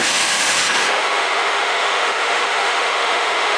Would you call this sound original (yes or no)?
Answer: no